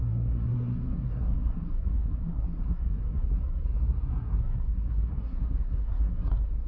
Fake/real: fake